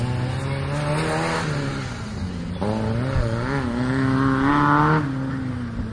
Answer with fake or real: real